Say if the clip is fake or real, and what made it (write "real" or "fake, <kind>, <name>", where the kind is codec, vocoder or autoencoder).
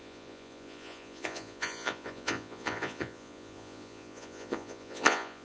fake, vocoder, Vocos